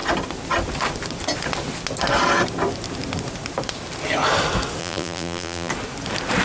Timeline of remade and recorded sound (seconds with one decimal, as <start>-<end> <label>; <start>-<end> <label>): 0.0-4.8 recorded; 4.8-5.7 remade; 5.7-6.4 recorded